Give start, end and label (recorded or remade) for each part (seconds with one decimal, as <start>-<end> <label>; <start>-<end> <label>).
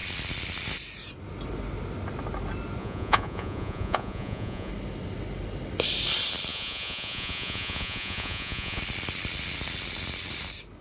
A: 0.0-2.8 recorded; 2.8-4.7 remade; 4.7-6.5 recorded; 6.5-8.8 remade; 8.8-10.8 recorded